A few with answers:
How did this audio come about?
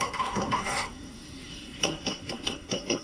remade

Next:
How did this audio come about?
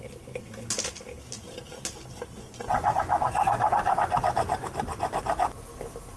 recorded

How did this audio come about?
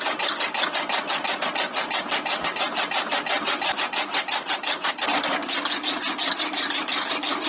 recorded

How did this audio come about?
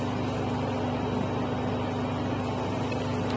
recorded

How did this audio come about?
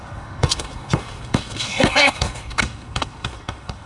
remade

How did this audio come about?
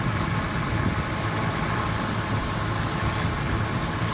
recorded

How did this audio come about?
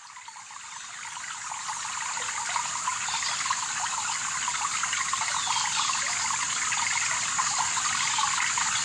recorded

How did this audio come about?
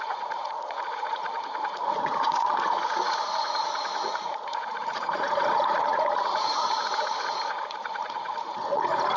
remade